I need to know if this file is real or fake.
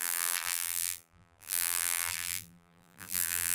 fake